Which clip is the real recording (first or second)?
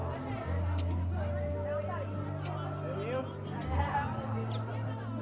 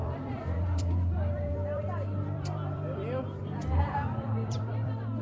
first